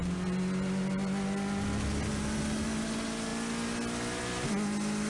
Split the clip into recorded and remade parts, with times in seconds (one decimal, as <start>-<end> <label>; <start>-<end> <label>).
0.0-5.1 recorded

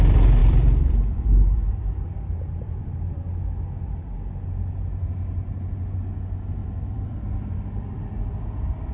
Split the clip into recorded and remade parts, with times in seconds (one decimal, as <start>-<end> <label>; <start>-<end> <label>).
0.0-0.4 recorded; 0.4-3.3 remade; 3.3-6.6 recorded; 6.6-8.0 remade; 8.0-8.9 recorded

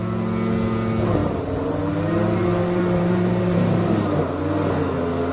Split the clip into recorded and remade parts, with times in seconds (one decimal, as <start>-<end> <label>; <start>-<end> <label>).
0.0-1.2 recorded; 1.2-4.4 remade; 4.4-5.3 recorded

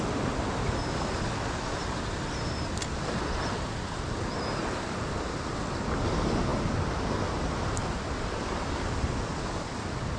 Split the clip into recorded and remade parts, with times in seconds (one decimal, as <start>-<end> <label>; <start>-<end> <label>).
0.0-1.8 recorded; 1.8-3.1 remade; 3.1-10.2 recorded

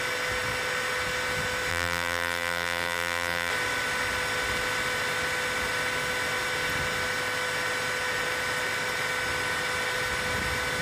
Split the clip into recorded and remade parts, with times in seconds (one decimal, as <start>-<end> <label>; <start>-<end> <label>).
0.0-1.7 recorded; 1.7-3.5 remade; 3.5-10.8 recorded

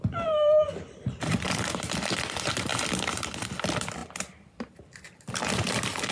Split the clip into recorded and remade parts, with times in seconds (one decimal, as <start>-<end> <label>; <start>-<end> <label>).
0.0-6.1 remade